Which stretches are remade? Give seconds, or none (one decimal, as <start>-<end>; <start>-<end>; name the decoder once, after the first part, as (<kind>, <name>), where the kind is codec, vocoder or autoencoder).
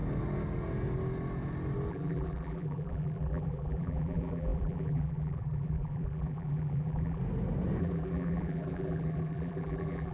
1.9-7.2 (vocoder, BigVGAN v2); 7.8-10.1